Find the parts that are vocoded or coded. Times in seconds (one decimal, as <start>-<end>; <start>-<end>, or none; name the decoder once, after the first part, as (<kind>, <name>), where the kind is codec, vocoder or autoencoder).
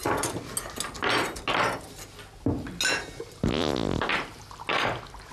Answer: 4.1-4.6 (vocoder, BigVGAN v2)